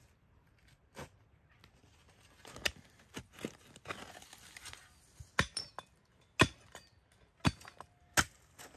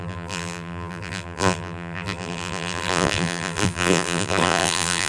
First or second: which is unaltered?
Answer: first